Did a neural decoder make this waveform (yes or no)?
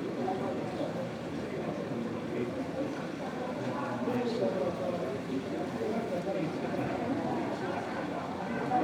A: yes